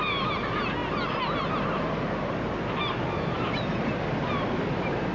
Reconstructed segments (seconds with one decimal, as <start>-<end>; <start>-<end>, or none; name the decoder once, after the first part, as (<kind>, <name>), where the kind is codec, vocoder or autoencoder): none